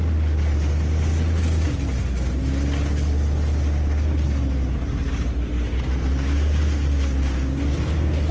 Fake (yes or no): no